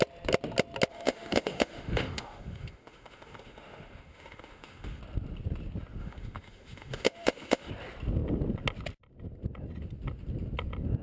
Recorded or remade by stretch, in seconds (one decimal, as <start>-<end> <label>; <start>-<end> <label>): 0.0-0.9 recorded; 0.9-5.0 remade; 5.0-6.0 recorded; 6.0-7.7 remade; 7.7-11.0 recorded